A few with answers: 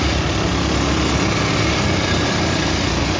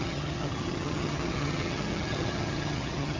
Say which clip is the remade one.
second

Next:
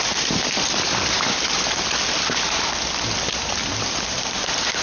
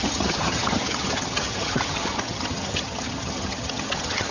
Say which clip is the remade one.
second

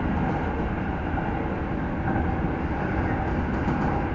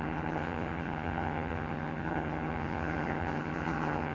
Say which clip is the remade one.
second